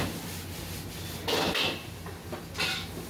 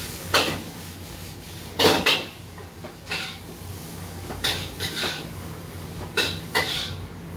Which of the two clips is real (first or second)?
first